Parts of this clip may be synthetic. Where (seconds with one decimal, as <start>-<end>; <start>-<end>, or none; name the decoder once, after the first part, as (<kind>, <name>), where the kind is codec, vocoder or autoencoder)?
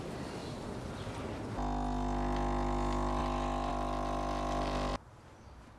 none